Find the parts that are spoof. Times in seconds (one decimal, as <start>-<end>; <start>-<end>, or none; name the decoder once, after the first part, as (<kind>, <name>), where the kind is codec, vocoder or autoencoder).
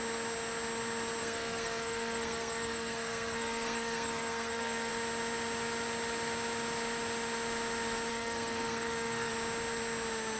1.2-4.9 (codec, SNAC); 8.1-9.3